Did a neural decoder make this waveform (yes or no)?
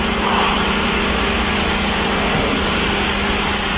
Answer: no